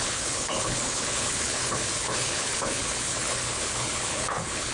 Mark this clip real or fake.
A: fake